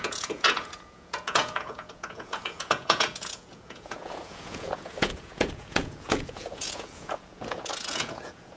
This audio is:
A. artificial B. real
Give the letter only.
A